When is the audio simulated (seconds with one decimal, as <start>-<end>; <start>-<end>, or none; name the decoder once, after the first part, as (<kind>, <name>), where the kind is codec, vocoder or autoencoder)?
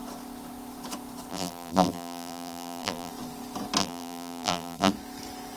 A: 1.3-3.1 (vocoder, BigVGAN v2); 3.8-4.9